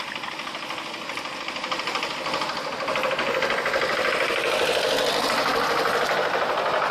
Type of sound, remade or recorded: recorded